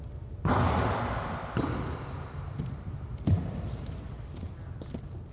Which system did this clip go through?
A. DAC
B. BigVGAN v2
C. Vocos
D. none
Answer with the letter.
D